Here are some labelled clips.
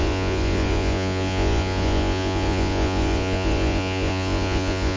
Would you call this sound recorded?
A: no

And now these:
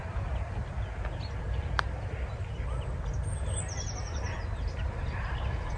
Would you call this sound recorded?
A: yes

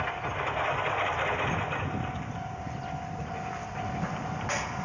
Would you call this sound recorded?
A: yes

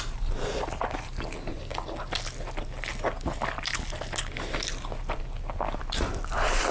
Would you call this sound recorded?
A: yes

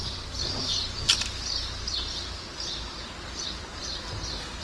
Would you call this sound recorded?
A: yes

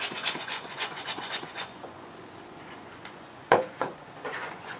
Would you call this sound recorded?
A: no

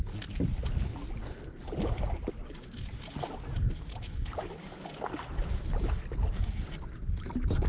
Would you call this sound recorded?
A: yes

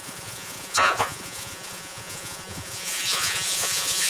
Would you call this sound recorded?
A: no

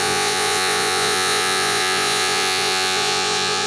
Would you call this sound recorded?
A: no